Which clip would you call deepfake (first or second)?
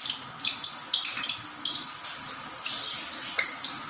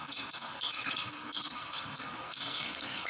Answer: second